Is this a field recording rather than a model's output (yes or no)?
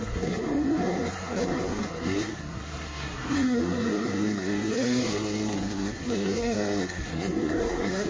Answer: no